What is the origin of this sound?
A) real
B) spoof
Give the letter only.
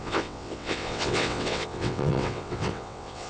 B